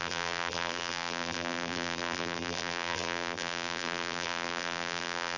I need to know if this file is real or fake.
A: fake